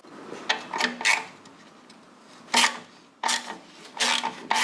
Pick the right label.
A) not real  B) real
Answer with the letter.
B